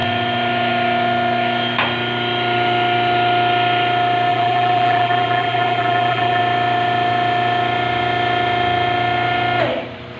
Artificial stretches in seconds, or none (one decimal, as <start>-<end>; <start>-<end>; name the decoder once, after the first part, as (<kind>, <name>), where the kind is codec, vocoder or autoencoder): 4.3-6.4 (vocoder, BigVGAN v2)

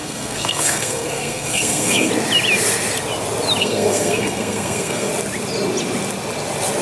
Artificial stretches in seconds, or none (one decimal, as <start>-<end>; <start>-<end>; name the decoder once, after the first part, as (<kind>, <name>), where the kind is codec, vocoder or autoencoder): 0.0-2.1 (codec, SNAC); 3.6-5.1

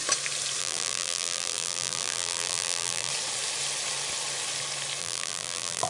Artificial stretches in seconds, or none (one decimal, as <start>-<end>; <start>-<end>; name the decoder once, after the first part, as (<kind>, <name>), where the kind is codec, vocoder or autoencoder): 0.6-3.1 (vocoder, BigVGAN v2); 5.0-5.9

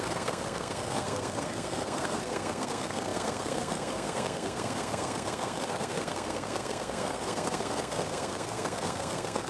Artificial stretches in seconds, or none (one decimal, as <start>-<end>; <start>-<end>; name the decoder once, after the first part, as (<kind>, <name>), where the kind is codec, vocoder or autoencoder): 0.0-9.5 (codec, SNAC)

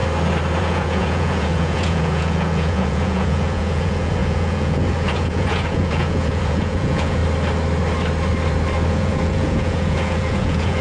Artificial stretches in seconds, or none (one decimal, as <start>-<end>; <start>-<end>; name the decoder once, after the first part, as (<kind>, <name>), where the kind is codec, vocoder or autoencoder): 0.6-7.2 (vocoder, Vocos); 8.9-10.8

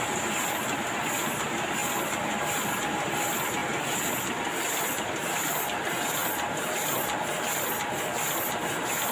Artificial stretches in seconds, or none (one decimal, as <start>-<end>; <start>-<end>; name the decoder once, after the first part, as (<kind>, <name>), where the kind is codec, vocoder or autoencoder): none

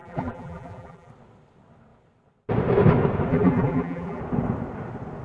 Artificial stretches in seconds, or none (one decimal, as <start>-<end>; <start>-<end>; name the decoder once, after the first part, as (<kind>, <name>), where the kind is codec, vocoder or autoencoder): 0.0-1.1 (vocoder, BigVGAN v2); 3.3-4.2